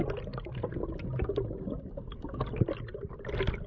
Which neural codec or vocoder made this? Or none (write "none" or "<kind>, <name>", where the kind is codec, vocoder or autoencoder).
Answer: none